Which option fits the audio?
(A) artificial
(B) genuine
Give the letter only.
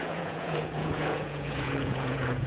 A